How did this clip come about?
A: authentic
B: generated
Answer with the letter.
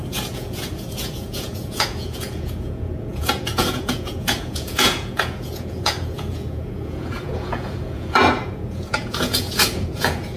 B